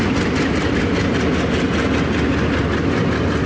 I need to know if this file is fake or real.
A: real